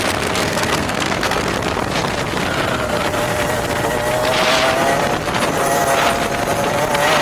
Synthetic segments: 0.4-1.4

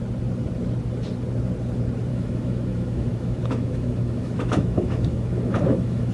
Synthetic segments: 2.1-6.1